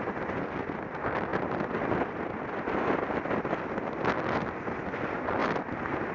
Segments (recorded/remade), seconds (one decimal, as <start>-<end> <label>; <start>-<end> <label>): 0.0-6.1 recorded